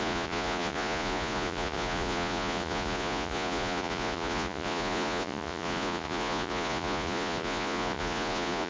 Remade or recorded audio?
remade